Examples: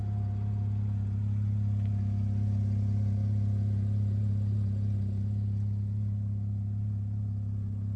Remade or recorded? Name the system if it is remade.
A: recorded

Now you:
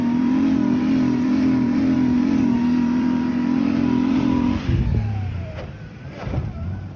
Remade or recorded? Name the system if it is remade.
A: remade, vocoder, BigVGAN v2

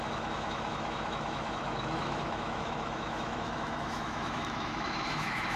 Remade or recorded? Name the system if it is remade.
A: remade, autoencoder, DAC-VAE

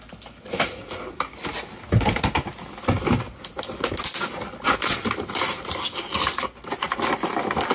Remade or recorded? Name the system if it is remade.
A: recorded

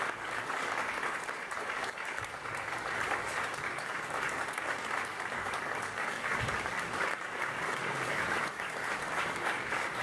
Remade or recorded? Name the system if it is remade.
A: remade, codec, DAC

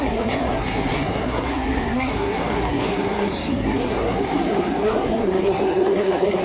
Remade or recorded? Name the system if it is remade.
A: remade, codec, SNAC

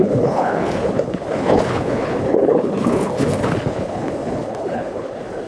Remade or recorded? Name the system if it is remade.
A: remade, codec, HILCodec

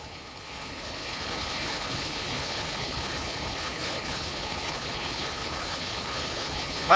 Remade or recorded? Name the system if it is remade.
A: remade, codec, HILCodec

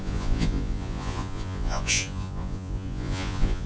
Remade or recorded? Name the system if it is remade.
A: remade, vocoder, Vocos